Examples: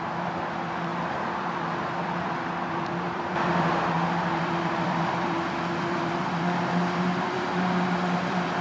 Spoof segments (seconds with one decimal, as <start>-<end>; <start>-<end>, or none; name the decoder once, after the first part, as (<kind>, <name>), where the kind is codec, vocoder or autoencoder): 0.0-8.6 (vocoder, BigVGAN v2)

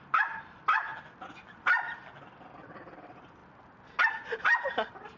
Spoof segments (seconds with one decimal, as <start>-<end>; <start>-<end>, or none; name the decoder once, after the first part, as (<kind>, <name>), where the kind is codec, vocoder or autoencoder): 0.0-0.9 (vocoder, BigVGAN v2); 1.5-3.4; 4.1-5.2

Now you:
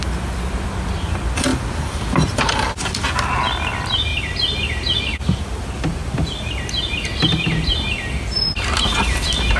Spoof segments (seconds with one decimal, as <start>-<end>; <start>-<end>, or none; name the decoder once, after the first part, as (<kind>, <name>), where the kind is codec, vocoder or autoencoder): 1.5-2.7 (vocoder, BigVGAN v2)